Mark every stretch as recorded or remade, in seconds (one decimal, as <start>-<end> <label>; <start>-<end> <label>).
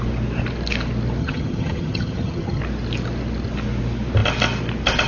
0.0-1.2 recorded; 1.2-2.6 remade; 2.6-5.1 recorded